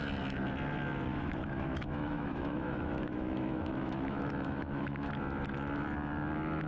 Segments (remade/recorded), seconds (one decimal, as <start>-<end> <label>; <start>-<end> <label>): 0.0-1.1 recorded; 1.1-5.1 remade; 5.1-6.7 recorded